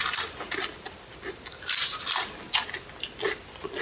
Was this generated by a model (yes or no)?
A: no